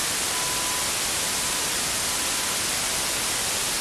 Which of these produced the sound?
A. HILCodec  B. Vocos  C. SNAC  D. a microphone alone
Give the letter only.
D